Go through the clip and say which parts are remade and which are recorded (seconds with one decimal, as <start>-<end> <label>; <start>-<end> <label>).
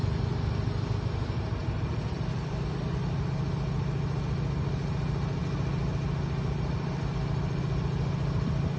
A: 0.0-1.6 recorded; 1.6-3.1 remade; 3.1-8.8 recorded